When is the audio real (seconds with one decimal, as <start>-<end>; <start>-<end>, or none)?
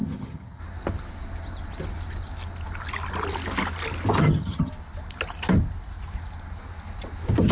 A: 0.6-4.2; 4.7-7.5